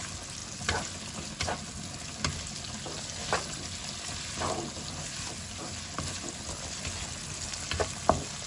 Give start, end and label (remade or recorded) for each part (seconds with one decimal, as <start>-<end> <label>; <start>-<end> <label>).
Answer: 0.0-8.5 recorded